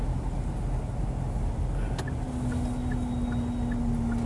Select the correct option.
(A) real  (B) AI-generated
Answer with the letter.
A